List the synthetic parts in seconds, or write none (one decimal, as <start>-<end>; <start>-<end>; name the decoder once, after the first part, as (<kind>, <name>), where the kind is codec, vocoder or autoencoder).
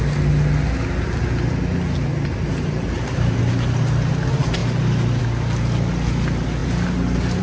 2.1-3.4 (vocoder, BigVGAN v2)